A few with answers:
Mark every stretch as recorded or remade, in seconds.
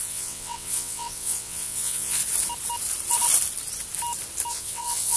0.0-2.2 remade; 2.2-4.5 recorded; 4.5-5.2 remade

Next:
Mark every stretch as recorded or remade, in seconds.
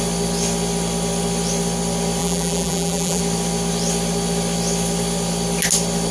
0.0-2.2 recorded; 2.2-3.2 remade; 3.2-6.1 recorded